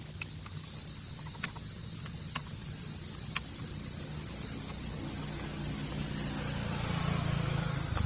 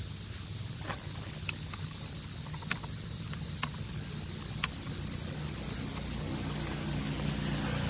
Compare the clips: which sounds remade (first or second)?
first